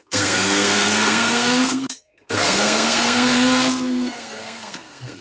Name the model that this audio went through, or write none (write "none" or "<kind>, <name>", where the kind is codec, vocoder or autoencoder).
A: codec, SNAC